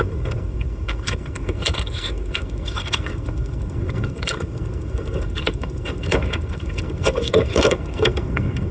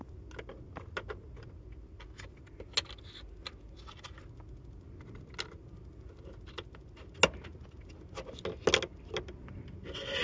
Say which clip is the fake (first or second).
first